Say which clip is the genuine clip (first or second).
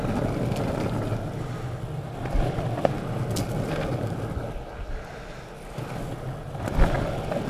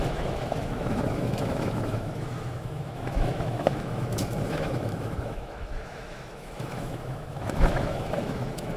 first